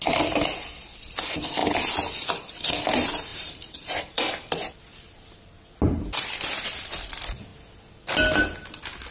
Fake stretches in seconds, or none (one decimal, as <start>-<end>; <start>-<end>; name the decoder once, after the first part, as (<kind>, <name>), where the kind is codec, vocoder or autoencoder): 3.3-4.2 (vocoder, BigVGAN v2)